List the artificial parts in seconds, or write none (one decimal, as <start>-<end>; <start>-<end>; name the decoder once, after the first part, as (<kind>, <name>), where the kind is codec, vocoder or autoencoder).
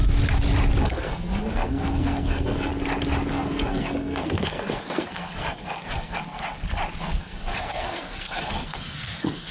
0.8-2.7 (codec, SNAC); 3.3-6.4; 7.0-9.5